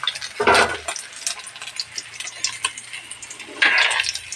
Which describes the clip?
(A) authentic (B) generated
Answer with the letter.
A